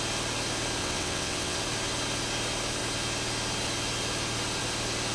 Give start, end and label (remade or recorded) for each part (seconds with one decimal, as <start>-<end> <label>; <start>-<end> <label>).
0.0-0.8 recorded; 0.8-1.6 remade; 1.6-5.1 recorded